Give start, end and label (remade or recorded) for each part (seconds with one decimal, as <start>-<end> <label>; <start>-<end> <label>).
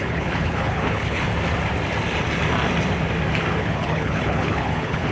0.0-1.3 remade; 1.3-3.6 recorded; 3.6-5.1 remade